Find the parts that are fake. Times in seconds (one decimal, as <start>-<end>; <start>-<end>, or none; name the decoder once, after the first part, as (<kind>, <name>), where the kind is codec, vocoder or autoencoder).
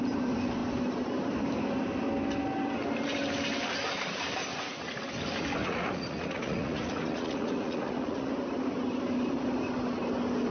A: 4.5-5.0 (vocoder, Vocos); 5.6-8.3